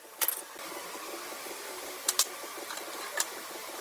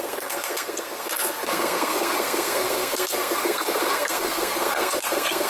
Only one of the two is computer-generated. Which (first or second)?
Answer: second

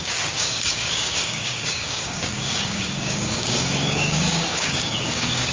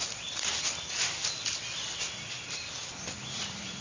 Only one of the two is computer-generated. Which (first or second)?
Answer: first